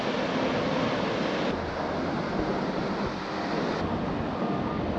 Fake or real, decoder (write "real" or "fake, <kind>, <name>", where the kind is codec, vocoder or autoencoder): real